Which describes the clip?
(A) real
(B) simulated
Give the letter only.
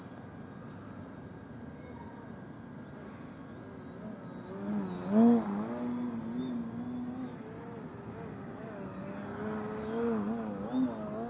A